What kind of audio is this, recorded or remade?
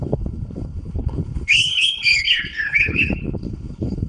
remade